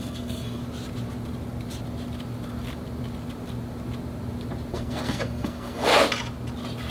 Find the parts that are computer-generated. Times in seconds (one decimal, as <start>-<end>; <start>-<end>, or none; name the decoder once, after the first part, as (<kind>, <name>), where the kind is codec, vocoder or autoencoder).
0.0-0.6 (codec, SNAC); 4.7-5.9